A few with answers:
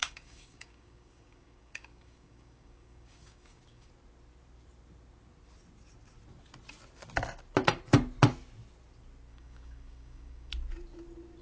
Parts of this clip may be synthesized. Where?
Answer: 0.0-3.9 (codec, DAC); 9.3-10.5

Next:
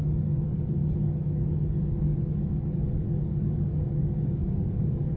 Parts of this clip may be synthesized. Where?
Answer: 0.0-5.2 (codec, DAC)

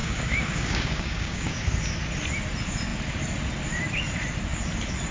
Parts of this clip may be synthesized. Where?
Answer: 0.0-1.5 (codec, DAC)